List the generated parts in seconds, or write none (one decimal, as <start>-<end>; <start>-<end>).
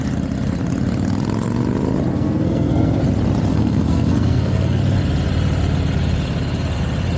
2.1-3.0; 3.5-4.8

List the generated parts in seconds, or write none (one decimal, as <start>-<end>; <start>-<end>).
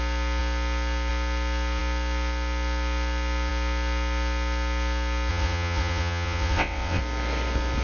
5.3-7.0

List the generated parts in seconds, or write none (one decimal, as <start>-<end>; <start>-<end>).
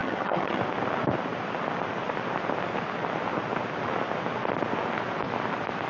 0.0-0.6